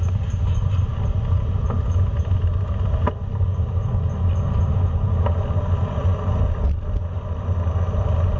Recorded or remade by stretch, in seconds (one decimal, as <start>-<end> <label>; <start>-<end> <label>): 0.0-8.4 recorded